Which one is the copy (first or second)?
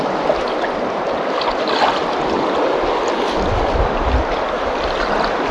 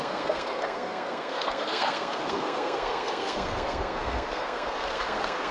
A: second